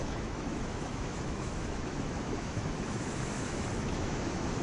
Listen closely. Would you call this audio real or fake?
fake